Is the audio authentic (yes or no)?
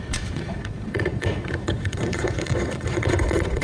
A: no